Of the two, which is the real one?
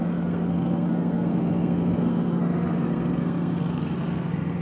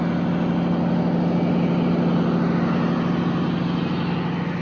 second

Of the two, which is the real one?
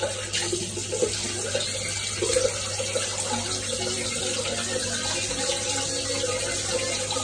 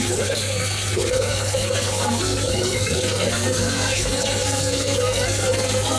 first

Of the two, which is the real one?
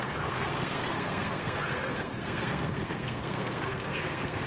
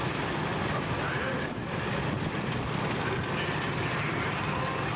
second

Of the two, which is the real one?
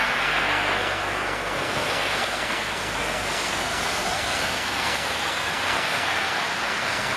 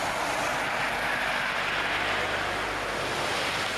second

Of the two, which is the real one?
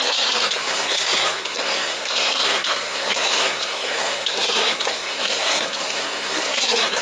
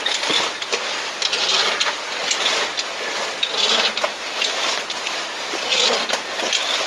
second